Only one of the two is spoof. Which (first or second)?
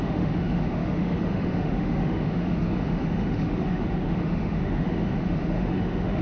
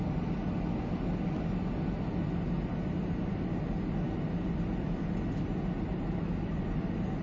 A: first